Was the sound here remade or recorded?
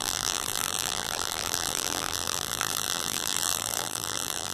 remade